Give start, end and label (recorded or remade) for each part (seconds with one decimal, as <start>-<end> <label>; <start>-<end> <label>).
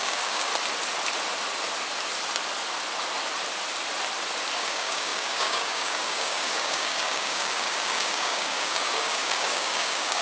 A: 0.0-0.5 remade; 0.5-4.6 recorded; 4.6-10.2 remade